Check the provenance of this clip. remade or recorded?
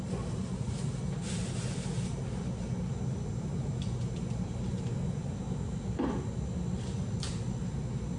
recorded